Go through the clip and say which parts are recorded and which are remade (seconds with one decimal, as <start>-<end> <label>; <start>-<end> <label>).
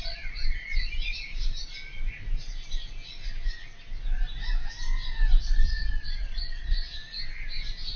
0.0-1.3 remade; 1.3-5.4 recorded; 5.4-7.0 remade; 7.0-8.0 recorded